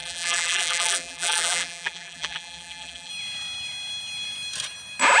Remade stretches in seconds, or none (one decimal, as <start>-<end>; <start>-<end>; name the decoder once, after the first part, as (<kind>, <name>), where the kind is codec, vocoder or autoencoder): 0.0-3.1 (vocoder, BigVGAN v2)